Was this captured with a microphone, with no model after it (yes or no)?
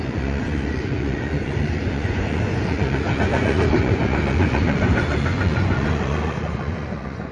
no